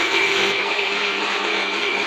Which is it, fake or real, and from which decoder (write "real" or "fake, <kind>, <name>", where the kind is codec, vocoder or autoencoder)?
fake, codec, SNAC